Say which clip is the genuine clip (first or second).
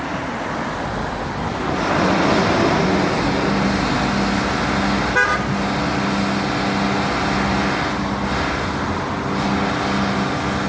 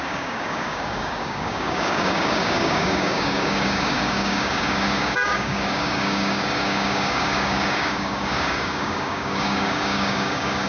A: first